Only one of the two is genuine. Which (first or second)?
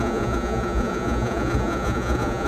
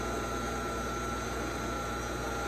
second